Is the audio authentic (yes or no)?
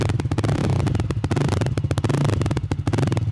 yes